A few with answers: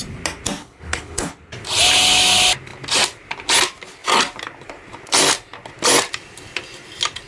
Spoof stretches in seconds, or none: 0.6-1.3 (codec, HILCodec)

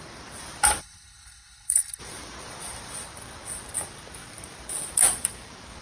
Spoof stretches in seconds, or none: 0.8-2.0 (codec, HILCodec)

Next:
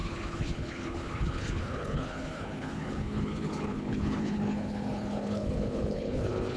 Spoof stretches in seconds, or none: 0.0-6.6 (codec, HILCodec)